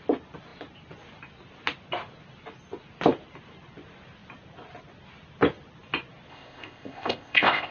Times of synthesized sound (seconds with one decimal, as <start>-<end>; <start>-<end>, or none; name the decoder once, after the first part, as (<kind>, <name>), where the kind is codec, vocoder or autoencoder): 6.3-7.7 (codec, ZipCodec)